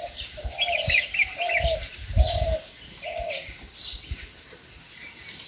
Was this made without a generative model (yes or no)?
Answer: yes